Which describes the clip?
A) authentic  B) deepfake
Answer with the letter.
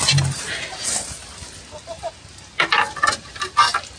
A